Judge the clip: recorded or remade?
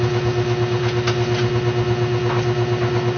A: recorded